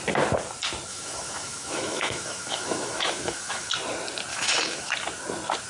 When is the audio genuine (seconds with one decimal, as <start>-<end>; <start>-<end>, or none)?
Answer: 0.0-0.9; 3.7-4.3; 4.9-5.7